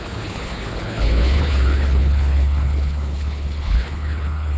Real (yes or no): no